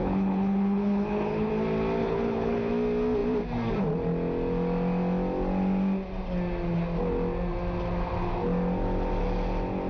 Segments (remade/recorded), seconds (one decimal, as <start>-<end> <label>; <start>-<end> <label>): 0.0-1.5 remade; 1.5-2.0 recorded; 2.0-2.7 remade; 2.7-9.9 recorded